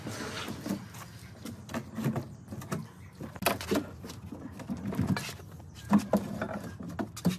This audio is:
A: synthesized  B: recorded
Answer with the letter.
B